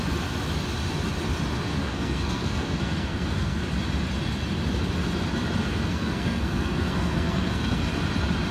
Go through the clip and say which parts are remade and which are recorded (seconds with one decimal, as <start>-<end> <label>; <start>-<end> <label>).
0.0-1.8 recorded; 1.8-3.6 remade; 3.6-5.6 recorded; 5.6-7.9 remade; 7.9-8.5 recorded